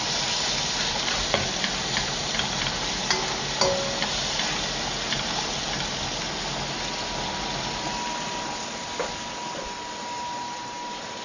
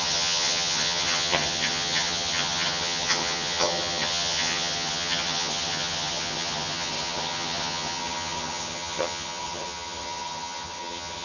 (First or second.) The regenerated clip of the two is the second